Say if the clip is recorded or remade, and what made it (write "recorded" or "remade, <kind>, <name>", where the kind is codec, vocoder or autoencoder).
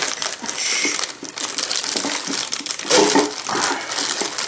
recorded